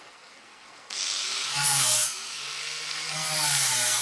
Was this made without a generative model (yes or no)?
no